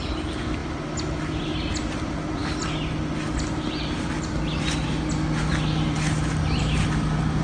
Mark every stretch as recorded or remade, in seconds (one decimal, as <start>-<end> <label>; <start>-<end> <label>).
0.0-7.4 recorded